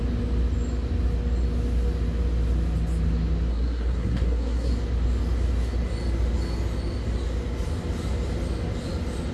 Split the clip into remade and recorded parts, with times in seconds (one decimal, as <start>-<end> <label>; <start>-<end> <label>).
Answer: 0.0-3.5 recorded; 3.5-4.7 remade; 4.7-9.3 recorded